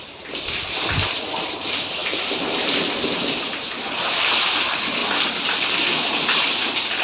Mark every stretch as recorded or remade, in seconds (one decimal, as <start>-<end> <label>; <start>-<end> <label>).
0.0-2.0 recorded; 2.0-4.3 remade; 4.3-7.0 recorded